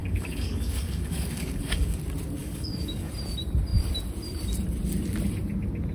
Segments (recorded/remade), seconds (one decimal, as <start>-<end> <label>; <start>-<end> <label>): 0.0-2.0 remade; 2.0-2.4 recorded; 2.4-3.1 remade; 3.1-5.9 recorded